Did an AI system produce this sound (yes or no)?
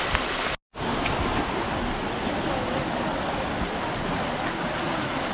no